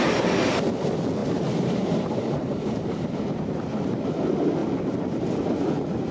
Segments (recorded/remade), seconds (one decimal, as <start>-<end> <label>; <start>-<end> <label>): 0.0-1.2 recorded; 1.2-4.1 remade; 4.1-6.1 recorded